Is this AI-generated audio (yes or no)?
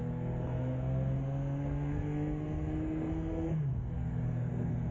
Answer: yes